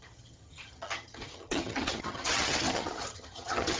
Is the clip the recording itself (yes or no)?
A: no